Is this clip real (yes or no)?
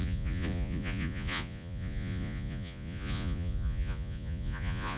no